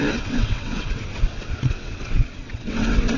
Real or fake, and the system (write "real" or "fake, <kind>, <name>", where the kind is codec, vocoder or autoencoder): fake, vocoder, WaveNeXt